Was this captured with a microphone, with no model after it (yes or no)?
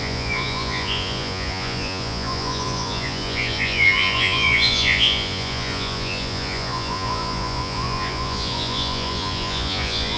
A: no